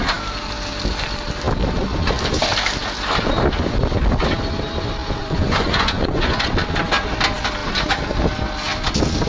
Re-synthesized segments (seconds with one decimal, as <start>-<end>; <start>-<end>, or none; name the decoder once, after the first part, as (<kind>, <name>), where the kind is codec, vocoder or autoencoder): 5.2-6.5 (vocoder, Vocos)

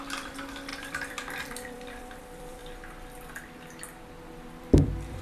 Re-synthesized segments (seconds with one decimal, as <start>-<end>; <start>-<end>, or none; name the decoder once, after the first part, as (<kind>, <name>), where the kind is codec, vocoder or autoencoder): 0.0-2.6 (vocoder, BigVGAN v2); 4.6-5.2